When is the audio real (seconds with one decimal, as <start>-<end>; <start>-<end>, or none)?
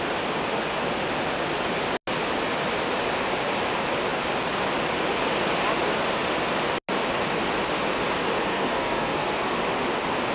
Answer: 0.0-8.5; 9.5-10.3